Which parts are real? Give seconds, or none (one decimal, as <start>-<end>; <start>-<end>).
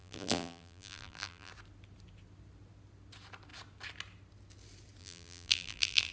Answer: 1.5-5.0